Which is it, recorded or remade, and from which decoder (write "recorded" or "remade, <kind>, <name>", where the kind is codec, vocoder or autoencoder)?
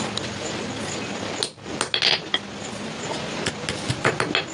recorded